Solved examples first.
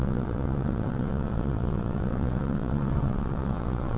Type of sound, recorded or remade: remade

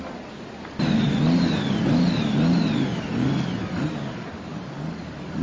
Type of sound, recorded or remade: recorded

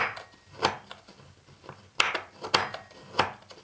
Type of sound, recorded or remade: recorded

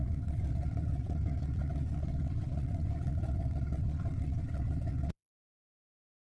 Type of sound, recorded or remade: remade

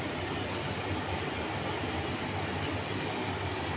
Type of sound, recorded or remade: recorded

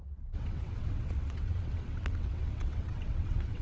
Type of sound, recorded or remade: remade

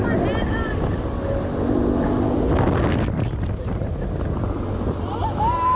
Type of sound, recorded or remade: recorded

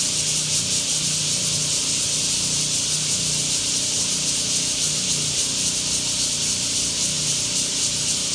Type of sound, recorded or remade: recorded